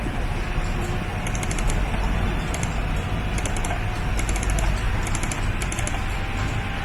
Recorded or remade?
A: recorded